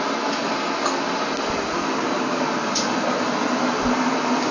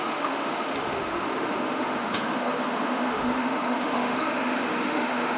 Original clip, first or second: first